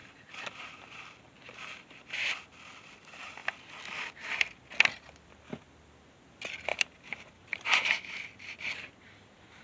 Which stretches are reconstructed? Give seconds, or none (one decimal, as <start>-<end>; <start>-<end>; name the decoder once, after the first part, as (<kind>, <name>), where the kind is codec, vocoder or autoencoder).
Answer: 6.7-8.0 (vocoder, BigVGAN v2)